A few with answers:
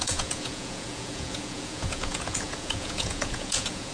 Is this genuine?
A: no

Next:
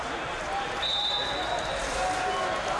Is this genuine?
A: yes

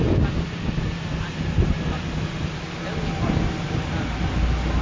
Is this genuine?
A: yes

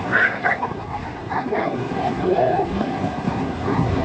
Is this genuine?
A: no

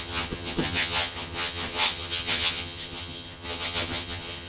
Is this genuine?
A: no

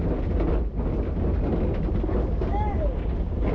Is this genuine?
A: yes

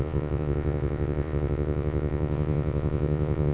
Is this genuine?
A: no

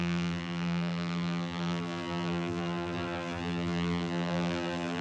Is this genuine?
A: no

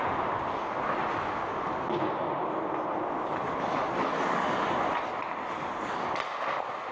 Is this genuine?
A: yes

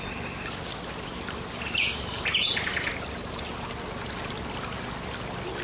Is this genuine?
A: yes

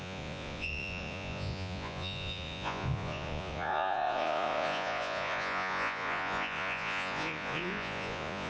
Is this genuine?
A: no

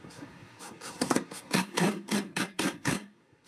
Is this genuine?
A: no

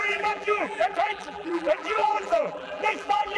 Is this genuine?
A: no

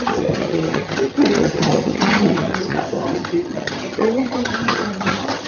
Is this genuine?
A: no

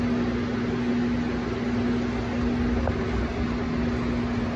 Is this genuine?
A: yes